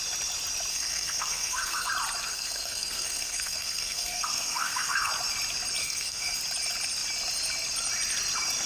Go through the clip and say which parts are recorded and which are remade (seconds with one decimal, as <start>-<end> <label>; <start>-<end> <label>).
0.0-0.7 recorded; 0.7-1.9 remade; 1.9-2.3 recorded; 2.3-5.1 remade; 5.1-5.8 recorded; 5.8-6.4 remade; 6.4-8.7 recorded